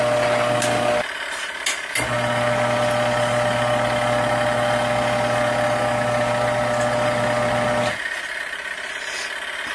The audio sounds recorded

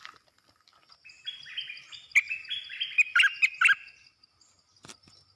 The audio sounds recorded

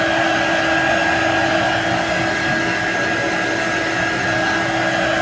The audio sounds recorded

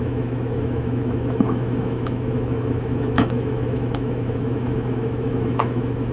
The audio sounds remade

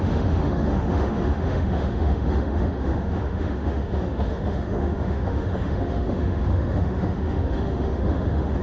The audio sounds remade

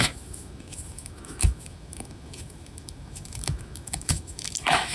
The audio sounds remade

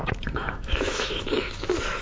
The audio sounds remade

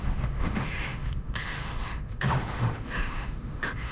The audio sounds remade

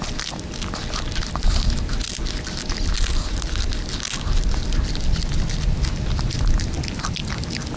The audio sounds recorded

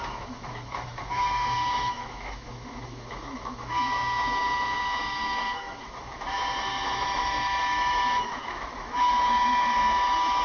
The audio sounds remade